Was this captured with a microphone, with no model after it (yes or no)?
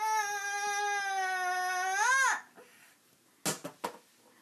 yes